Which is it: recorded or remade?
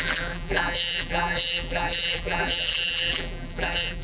remade